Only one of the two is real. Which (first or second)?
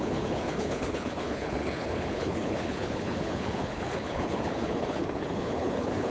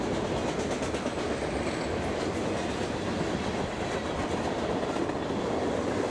second